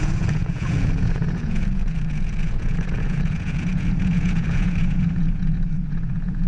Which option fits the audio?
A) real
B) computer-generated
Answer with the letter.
B